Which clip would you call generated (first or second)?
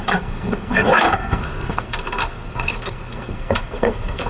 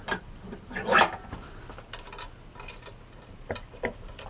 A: first